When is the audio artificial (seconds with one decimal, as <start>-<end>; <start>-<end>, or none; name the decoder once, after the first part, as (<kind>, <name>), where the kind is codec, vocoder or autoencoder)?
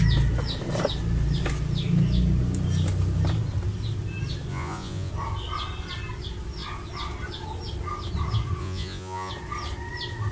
4.5-5.1 (vocoder, Vocos); 8.6-9.3